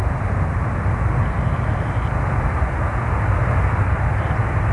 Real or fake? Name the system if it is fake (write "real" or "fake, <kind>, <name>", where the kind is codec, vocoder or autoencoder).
real